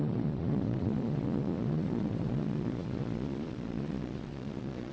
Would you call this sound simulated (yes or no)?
yes